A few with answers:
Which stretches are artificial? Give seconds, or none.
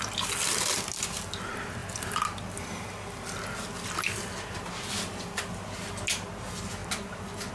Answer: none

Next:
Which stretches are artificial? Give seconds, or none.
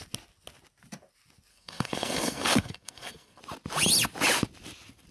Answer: 1.5-3.4 (codec, SNAC)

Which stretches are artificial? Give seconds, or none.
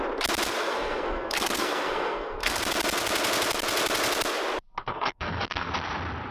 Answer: 0.6-2.6 (codec, SNAC); 4.8-5.7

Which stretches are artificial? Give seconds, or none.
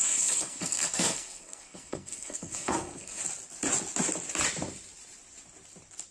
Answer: 0.0-3.2 (codec, SNAC)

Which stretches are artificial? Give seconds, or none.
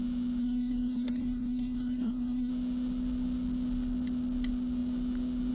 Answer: 0.4-2.5 (codec, SNAC)